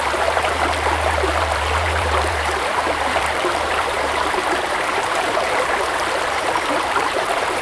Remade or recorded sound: remade